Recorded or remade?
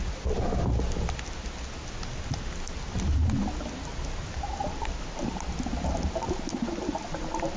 recorded